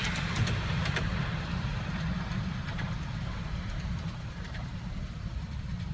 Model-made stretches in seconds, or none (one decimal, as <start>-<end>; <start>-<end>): 0.0-2.1; 2.8-4.7; 5.3-5.9